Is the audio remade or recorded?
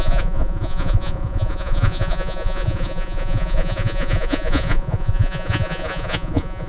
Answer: remade